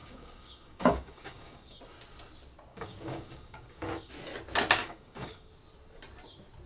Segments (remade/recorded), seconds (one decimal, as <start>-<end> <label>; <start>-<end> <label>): 0.0-1.8 remade; 1.8-2.7 recorded; 2.7-4.1 remade; 4.1-4.8 recorded; 4.8-5.5 remade; 5.5-6.7 recorded